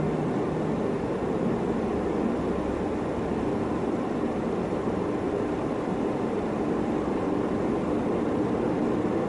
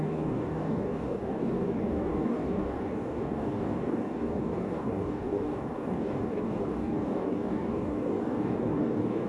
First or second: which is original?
first